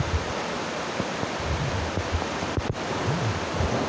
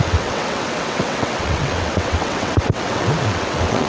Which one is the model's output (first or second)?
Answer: second